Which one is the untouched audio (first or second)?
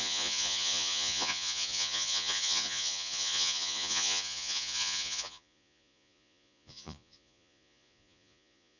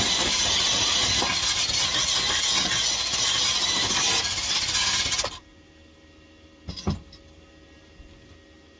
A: second